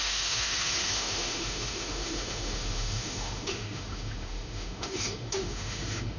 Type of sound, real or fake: fake